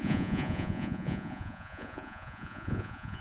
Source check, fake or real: fake